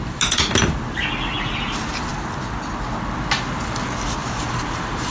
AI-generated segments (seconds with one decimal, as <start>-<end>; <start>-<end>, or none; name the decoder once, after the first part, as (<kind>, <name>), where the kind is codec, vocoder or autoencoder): 4.2-5.1 (vocoder, BigVGAN v2)